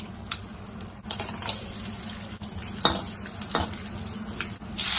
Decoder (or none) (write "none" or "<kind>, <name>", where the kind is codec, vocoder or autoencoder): none